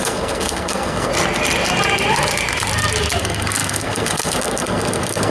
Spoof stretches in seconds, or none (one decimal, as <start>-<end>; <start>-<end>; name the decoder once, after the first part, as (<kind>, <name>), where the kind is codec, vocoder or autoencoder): 0.0-1.1 (codec, SNAC); 3.2-5.3